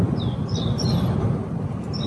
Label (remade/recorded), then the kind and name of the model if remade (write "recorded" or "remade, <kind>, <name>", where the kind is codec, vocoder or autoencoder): recorded